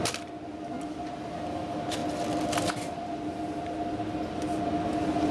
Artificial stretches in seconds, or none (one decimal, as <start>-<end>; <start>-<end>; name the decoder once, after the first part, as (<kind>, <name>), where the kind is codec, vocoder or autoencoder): none

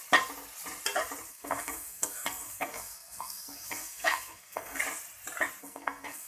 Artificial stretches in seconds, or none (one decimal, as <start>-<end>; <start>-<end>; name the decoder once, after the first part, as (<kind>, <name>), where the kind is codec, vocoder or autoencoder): 1.3-4.8 (codec, SNAC); 5.6-6.3

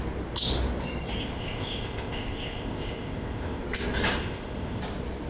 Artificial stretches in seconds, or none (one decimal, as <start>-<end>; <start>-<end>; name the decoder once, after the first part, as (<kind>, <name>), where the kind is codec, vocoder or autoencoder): 1.2-3.6 (codec, ZipCodec); 4.2-4.8

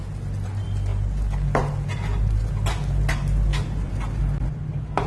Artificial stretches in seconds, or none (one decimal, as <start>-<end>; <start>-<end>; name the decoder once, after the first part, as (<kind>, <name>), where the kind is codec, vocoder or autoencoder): none

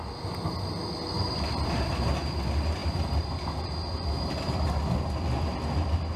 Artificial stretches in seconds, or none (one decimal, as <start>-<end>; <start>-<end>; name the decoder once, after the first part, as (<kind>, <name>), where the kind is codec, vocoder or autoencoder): none

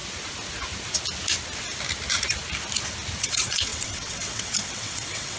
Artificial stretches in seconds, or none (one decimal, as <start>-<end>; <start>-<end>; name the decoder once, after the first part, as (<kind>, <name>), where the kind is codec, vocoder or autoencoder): 3.2-5.4 (vocoder, WaveNeXt)

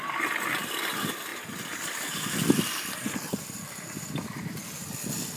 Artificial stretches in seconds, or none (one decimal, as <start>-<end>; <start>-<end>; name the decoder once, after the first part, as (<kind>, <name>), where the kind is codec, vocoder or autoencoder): none